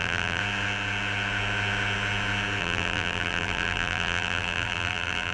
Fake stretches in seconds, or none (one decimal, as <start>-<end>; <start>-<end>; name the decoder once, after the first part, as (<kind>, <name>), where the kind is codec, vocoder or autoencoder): 0.0-0.4 (vocoder, BigVGAN v2); 2.6-5.3